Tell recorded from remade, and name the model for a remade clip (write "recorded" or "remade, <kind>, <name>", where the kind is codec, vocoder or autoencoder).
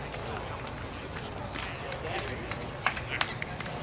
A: recorded